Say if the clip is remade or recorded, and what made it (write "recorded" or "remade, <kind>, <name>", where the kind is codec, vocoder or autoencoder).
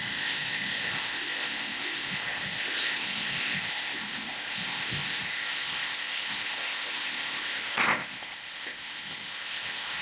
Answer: remade, codec, ZipCodec